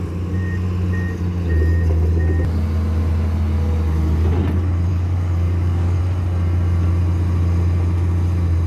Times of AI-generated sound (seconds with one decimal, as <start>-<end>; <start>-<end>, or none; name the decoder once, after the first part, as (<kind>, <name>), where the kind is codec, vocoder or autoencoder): 4.9-6.0 (codec, DAC)